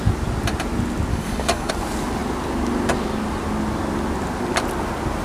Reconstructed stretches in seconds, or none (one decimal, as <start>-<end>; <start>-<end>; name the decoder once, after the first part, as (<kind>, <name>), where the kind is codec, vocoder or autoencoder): 1.1-1.7 (codec, DAC)

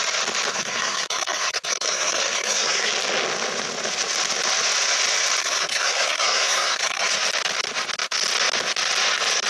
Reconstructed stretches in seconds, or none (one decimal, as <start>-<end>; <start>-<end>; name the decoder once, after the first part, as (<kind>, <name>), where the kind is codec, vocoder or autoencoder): 0.5-2.9 (codec, SNAC); 5.4-7.1

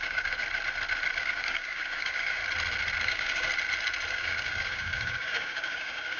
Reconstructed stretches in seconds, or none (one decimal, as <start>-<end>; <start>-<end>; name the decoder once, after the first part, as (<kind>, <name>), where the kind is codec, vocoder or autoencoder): 0.0-0.4 (codec, DAC); 1.2-2.4; 3.0-3.5; 4.1-6.2

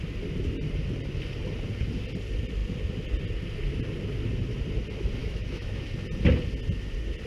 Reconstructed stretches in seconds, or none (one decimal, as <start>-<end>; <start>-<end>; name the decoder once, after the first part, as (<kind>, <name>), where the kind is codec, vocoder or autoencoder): 5.2-5.8 (autoencoder, DAC-VAE)

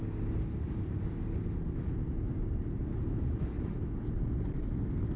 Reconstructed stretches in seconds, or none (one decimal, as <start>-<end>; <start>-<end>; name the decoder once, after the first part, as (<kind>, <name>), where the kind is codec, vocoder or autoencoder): none

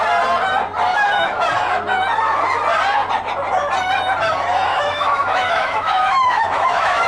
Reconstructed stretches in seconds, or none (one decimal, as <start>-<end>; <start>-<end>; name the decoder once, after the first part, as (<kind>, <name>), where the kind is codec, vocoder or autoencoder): 0.9-1.5 (autoencoder, DAC-VAE); 4.7-7.1